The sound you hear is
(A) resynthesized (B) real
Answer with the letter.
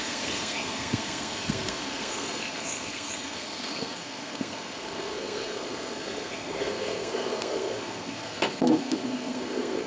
A